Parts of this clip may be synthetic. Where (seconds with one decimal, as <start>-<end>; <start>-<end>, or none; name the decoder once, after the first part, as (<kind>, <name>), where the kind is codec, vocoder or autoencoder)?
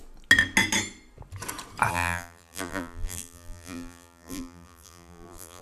1.9-5.6 (vocoder, BigVGAN v2)